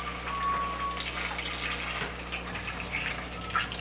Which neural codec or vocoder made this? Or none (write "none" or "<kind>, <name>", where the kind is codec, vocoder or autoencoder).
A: none